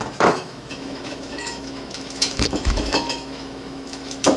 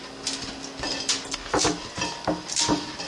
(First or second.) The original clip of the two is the second